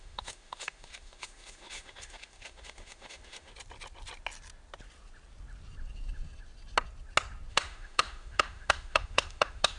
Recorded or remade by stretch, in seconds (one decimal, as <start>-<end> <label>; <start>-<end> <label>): 0.0-3.5 remade; 3.5-7.5 recorded; 7.5-9.8 remade